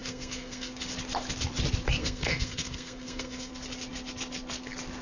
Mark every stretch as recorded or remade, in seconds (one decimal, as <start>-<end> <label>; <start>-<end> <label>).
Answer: 0.0-0.7 remade; 0.7-2.0 recorded; 2.0-3.5 remade; 3.5-5.0 recorded